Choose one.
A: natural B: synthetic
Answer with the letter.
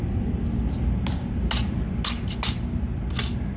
A